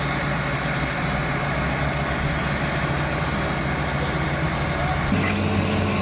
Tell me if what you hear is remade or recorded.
recorded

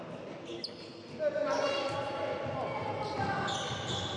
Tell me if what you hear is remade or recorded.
recorded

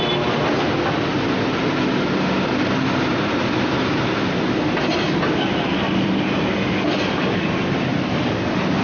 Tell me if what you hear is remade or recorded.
recorded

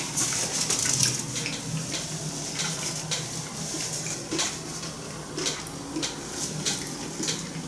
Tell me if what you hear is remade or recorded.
recorded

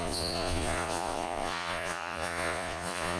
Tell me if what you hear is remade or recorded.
remade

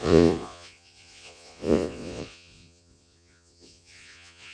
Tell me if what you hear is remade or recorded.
remade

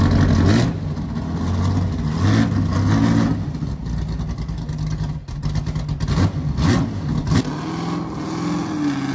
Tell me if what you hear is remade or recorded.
recorded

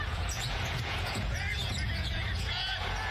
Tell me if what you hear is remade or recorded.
remade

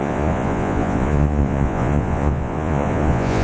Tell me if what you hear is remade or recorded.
remade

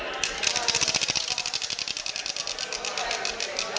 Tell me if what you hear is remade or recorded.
recorded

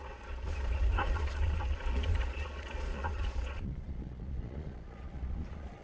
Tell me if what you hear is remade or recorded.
remade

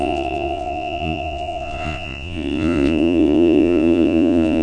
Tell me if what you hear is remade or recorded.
remade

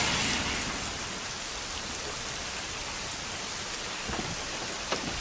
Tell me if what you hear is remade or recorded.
recorded